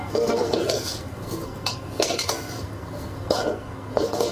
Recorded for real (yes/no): no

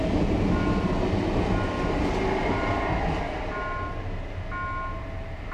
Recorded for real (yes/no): yes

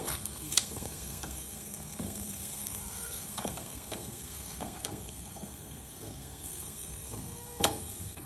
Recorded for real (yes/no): no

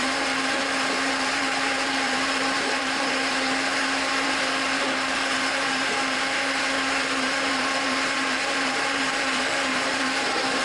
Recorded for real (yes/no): no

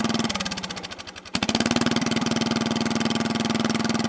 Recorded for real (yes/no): yes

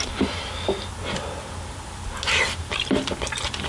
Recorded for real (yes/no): yes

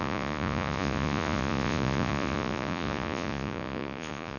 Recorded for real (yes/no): no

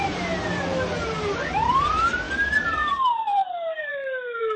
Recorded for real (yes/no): yes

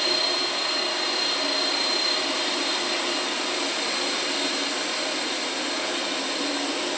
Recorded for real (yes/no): yes